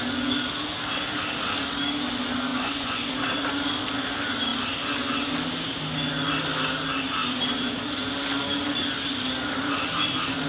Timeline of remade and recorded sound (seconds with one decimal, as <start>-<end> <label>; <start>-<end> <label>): 0.0-2.5 recorded; 2.5-3.1 remade; 3.1-10.5 recorded